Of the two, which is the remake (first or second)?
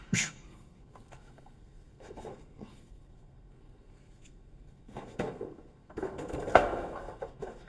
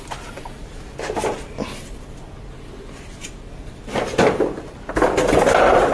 first